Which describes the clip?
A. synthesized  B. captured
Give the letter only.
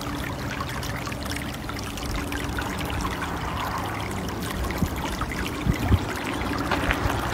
B